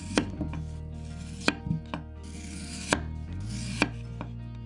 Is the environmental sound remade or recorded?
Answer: recorded